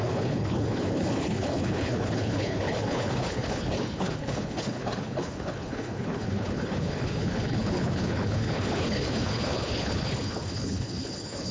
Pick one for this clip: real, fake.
fake